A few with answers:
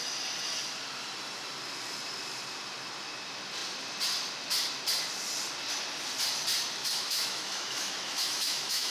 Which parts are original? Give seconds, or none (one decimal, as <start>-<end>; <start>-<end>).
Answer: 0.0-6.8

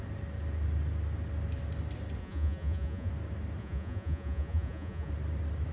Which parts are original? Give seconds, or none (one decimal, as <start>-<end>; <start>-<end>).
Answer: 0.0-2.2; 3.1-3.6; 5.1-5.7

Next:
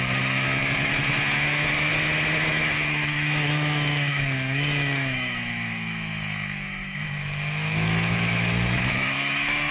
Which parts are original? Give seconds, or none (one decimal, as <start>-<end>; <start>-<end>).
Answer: 1.9-2.5

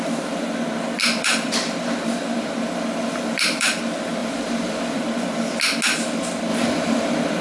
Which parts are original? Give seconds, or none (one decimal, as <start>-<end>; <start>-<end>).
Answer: 0.0-1.0; 3.7-4.2; 5.2-6.5

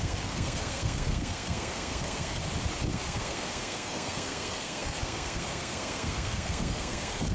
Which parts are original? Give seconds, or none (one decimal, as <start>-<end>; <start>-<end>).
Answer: 2.4-2.9